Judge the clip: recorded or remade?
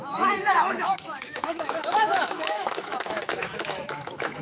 remade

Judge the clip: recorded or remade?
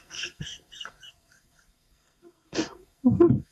remade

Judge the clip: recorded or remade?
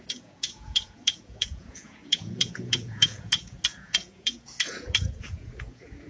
remade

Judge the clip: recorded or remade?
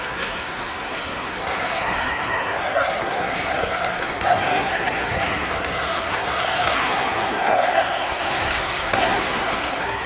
remade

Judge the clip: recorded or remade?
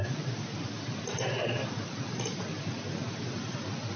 recorded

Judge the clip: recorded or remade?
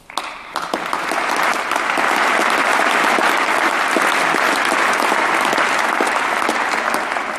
recorded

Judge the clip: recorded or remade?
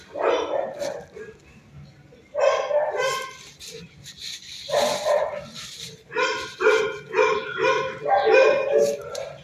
recorded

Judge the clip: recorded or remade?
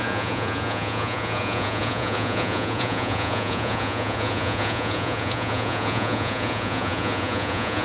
remade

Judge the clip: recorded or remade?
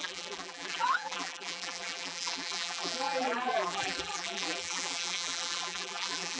remade